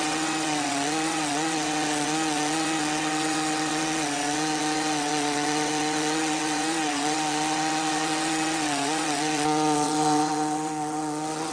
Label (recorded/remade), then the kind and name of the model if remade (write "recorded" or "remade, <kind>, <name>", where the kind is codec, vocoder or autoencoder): remade, vocoder, WaveNeXt